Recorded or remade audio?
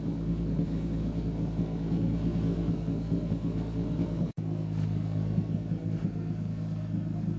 remade